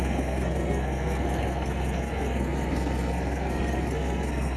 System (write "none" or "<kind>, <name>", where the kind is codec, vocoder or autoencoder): codec, SNAC